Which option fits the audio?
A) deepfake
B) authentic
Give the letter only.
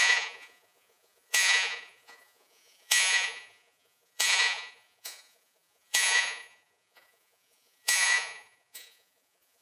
A